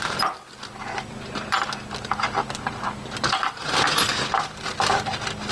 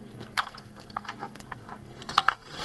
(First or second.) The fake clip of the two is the second